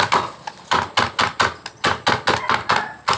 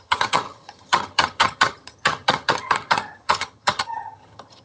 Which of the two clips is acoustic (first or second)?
first